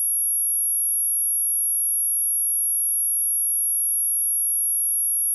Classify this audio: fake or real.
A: real